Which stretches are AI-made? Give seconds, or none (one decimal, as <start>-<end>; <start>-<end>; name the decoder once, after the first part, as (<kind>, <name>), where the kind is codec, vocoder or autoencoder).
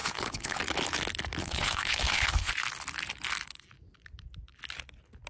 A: 0.0-0.6 (codec, HILCodec); 1.4-2.5